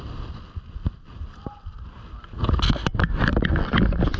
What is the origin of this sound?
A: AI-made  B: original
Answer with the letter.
B